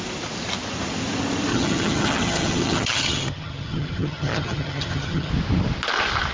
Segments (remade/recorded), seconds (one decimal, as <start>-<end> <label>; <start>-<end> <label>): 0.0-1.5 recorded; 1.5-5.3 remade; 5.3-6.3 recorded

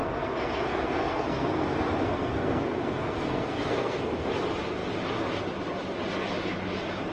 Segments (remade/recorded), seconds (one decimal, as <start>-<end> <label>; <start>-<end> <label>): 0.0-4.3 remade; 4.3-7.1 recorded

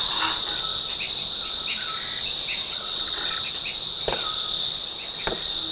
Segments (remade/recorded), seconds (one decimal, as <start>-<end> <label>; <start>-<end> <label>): 0.0-2.6 recorded; 2.6-3.3 remade; 3.3-5.7 recorded

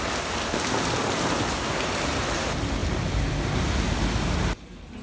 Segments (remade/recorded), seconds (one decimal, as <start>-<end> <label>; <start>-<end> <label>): 0.0-5.0 recorded

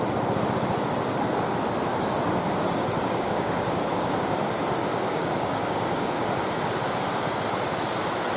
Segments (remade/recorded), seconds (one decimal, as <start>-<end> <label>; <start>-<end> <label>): 0.0-1.9 recorded; 1.9-4.4 remade; 4.4-4.9 recorded; 4.9-6.4 remade; 6.4-8.4 recorded

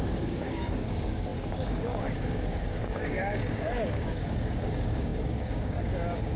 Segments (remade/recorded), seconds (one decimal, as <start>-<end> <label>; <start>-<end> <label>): 0.0-6.4 remade

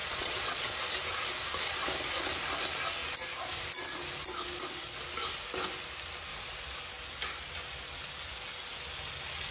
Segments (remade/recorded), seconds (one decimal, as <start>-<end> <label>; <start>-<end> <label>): 0.0-0.7 remade; 0.7-6.3 recorded; 6.3-6.8 remade; 6.8-9.5 recorded